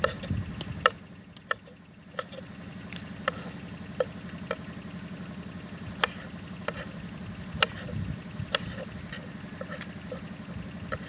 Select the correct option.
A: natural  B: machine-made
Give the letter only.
A